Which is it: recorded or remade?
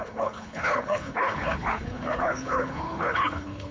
remade